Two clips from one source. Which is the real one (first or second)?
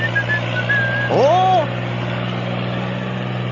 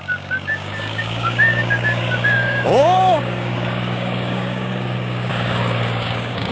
first